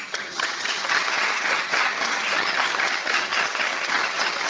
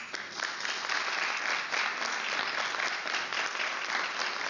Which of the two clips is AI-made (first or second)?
first